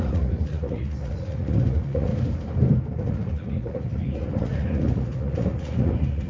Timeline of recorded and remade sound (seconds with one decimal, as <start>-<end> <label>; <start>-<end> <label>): 0.0-2.1 remade; 2.1-2.9 recorded; 2.9-6.3 remade